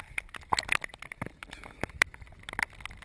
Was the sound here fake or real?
real